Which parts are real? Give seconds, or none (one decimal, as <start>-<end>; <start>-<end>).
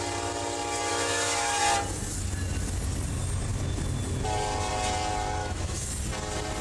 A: 0.0-0.9; 1.6-5.4; 5.9-6.6